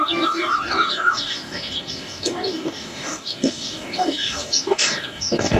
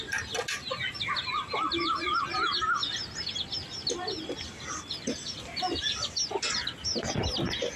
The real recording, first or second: second